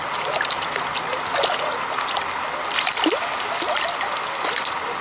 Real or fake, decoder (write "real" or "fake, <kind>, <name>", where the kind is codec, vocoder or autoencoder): real